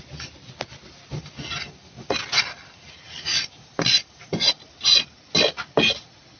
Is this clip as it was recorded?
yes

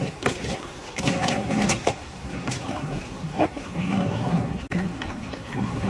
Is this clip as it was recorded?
no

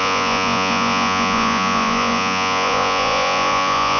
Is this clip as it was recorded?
no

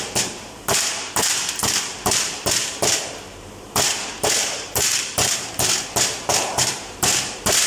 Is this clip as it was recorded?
no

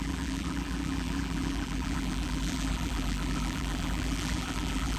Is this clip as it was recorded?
no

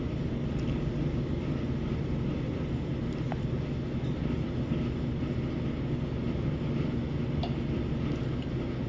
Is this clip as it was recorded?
yes